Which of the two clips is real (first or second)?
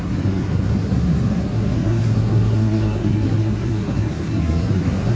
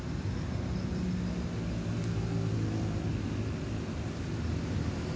second